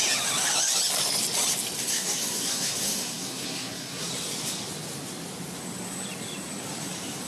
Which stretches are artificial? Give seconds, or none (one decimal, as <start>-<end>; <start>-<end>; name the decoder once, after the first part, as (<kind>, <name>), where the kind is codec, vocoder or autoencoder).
1.8-4.1 (codec, SNAC)